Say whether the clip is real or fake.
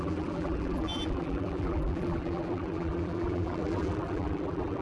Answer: fake